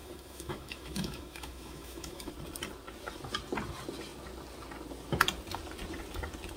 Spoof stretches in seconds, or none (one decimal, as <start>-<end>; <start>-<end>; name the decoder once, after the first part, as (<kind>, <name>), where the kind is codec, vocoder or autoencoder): 0.0-2.3 (autoencoder, DAC-VAE)